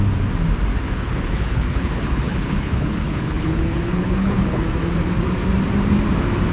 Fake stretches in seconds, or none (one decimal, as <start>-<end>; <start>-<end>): 0.7-4.6